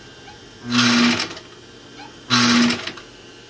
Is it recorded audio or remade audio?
recorded